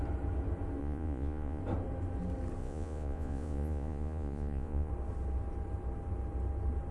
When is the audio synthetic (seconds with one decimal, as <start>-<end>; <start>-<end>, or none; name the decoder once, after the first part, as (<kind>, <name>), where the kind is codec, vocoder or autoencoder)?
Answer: 0.8-1.6 (vocoder, Vocos); 2.6-4.9